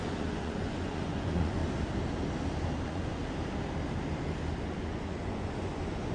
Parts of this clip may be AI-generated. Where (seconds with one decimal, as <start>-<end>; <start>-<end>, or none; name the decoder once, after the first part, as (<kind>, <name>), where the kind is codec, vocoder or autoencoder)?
0.0-1.6 (vocoder, Vocos); 2.8-3.2; 4.6-6.1